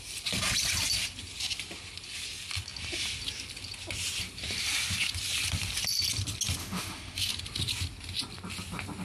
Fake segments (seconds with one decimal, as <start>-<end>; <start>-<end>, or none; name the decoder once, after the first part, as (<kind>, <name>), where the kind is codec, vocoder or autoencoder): 6.6-7.3 (autoencoder, DAC-VAE)

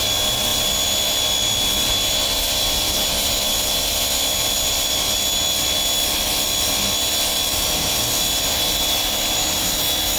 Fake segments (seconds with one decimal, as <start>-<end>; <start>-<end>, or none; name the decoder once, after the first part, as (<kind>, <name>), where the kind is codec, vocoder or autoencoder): none

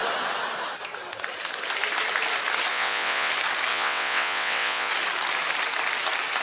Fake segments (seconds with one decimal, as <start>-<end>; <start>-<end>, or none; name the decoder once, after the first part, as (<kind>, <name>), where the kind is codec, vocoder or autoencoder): 2.7-3.3 (vocoder, WaveNeXt); 3.7-4.9

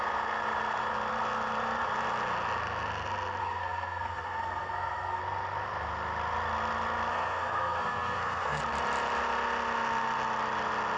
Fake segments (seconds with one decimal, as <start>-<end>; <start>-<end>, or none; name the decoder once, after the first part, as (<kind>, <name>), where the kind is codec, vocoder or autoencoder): 3.4-5.2 (codec, SNAC); 7.1-8.6

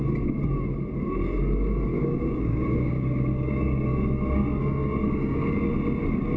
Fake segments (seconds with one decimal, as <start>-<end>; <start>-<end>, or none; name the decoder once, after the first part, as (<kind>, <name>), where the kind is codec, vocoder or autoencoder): 1.9-5.7 (codec, DAC)

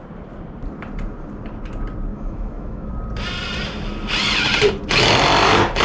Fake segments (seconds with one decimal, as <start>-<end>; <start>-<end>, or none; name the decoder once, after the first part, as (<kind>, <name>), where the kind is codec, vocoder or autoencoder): 2.1-2.9 (autoencoder, DAC-VAE)

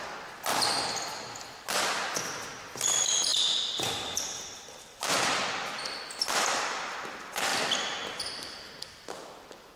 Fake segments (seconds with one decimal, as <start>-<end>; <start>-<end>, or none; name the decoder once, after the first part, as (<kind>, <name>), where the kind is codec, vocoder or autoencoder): 0.0-0.5 (vocoder, BigVGAN v2); 2.1-7.5; 8.2-9.8